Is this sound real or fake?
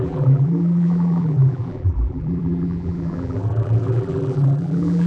fake